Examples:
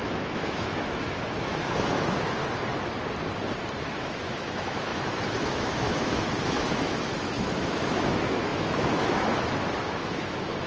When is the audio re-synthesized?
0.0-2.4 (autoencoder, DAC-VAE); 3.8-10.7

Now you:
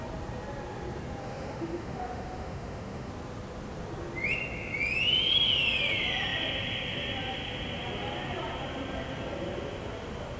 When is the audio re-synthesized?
1.2-3.1 (autoencoder, DAC-VAE)